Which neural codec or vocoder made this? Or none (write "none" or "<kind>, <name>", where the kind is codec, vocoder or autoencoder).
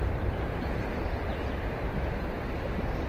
none